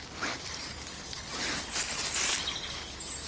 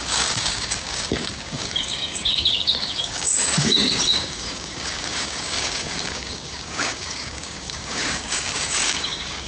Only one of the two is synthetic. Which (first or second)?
second